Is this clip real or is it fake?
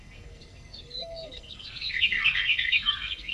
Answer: fake